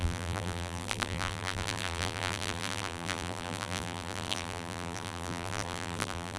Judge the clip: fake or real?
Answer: fake